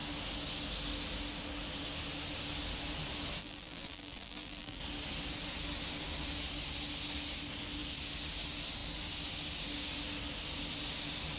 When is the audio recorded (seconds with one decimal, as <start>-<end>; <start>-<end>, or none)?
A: 0.0-3.4; 4.8-11.4